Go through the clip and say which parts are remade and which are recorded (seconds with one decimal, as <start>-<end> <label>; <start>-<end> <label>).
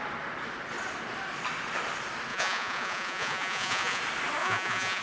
0.0-2.3 recorded; 2.3-4.0 remade; 4.0-4.4 recorded; 4.4-5.0 remade